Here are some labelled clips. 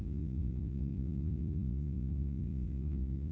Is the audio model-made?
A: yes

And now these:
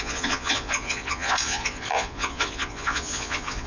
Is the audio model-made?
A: yes